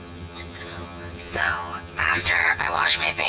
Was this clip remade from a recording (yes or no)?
yes